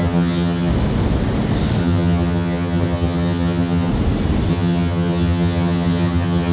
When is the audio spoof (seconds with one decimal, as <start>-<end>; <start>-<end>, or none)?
0.0-0.7; 1.8-3.9; 4.5-6.5